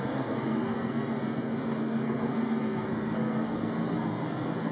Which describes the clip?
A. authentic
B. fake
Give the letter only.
B